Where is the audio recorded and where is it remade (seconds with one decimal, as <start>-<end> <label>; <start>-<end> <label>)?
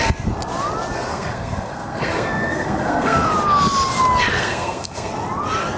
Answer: 0.0-1.1 recorded; 1.1-3.3 remade; 3.3-4.3 recorded; 4.3-5.1 remade; 5.1-5.8 recorded